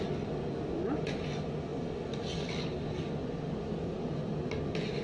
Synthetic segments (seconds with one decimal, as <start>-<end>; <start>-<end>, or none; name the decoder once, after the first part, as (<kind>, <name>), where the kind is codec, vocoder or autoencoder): none